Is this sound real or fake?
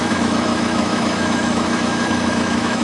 fake